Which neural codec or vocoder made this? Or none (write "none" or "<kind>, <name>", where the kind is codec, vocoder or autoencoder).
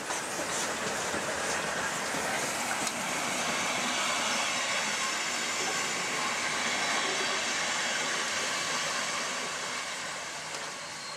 none